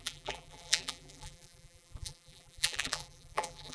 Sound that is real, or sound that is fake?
fake